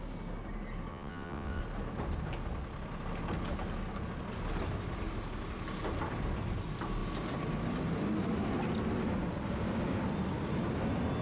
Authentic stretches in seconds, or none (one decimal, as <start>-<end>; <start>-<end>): 0.0-0.9; 1.6-11.2